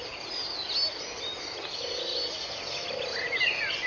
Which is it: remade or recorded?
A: recorded